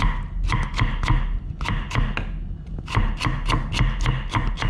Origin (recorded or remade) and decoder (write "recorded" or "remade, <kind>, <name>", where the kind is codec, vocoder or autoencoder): recorded